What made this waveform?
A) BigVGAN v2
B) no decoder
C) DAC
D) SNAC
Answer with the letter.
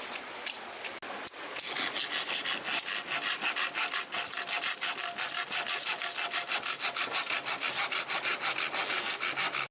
B